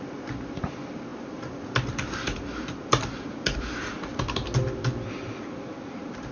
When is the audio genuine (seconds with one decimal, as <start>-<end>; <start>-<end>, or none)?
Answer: 0.0-1.1; 3.3-6.3